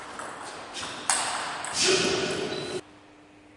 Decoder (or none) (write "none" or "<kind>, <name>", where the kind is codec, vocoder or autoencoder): none